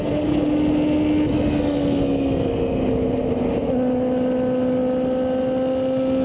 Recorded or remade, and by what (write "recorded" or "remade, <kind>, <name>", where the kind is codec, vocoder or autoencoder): recorded